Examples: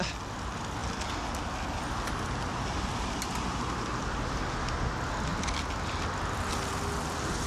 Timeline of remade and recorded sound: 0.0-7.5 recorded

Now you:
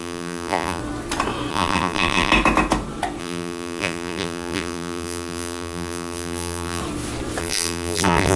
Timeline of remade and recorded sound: 0.0-0.8 remade; 0.8-1.5 recorded; 1.5-2.3 remade; 2.3-3.2 recorded; 3.2-6.8 remade; 6.8-7.4 recorded; 7.4-8.4 remade

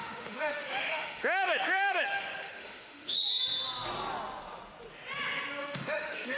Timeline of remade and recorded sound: 0.0-3.2 remade; 3.2-5.6 recorded; 5.6-6.4 remade

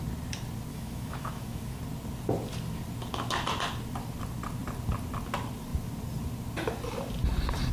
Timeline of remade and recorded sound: 0.0-0.7 recorded; 0.7-1.8 remade; 1.8-7.7 recorded

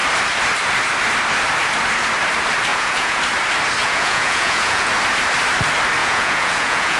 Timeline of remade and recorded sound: 0.0-2.7 recorded; 2.7-3.2 remade; 3.2-3.8 recorded; 3.8-4.9 remade; 4.9-6.0 recorded; 6.0-7.0 remade

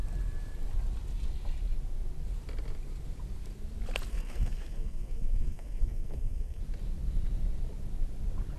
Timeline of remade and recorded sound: 0.0-4.1 recorded; 4.1-6.6 remade; 6.6-8.6 recorded

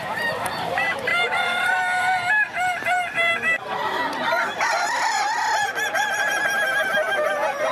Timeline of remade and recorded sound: 0.0-1.1 remade; 1.1-2.3 recorded; 2.3-3.3 remade; 3.3-6.0 recorded; 6.0-7.7 remade

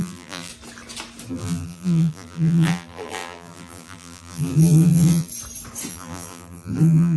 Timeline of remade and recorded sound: 0.0-0.5 remade; 0.5-1.3 recorded; 1.3-5.3 remade; 5.3-5.9 recorded; 5.9-7.2 remade